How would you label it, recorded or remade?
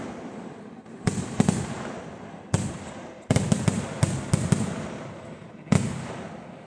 recorded